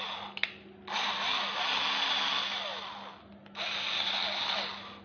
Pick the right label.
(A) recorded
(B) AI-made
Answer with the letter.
A